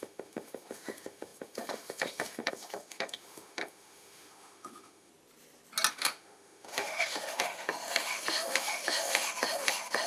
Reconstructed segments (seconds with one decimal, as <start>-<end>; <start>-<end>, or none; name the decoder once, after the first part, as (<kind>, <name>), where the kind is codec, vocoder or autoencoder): 0.0-5.1 (autoencoder, DAC-VAE); 5.9-10.1